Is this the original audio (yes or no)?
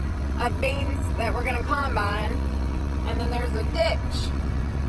no